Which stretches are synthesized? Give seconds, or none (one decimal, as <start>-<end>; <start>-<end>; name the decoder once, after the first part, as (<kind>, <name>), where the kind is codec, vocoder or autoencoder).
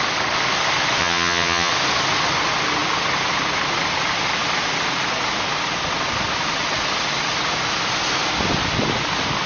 1.0-1.7 (vocoder, HiFi-GAN)